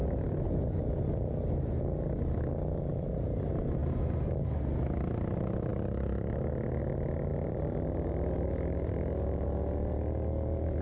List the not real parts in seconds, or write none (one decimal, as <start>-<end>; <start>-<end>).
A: 7.3-8.5